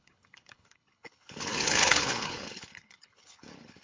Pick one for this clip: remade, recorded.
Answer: remade